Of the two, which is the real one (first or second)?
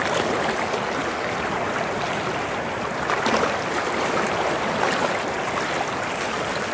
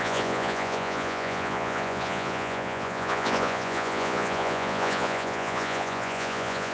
first